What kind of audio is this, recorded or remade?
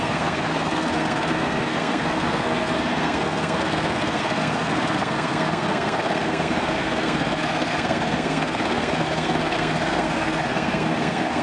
remade